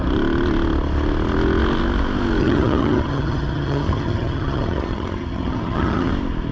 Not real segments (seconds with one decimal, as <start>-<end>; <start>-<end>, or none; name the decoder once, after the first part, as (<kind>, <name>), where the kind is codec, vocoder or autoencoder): 2.4-6.1 (vocoder, HiFi-GAN)